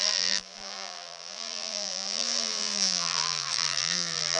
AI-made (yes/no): yes